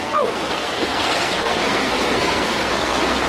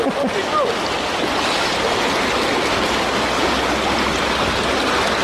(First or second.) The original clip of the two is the second